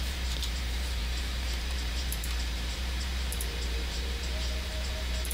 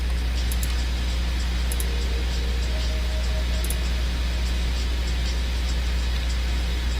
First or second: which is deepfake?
first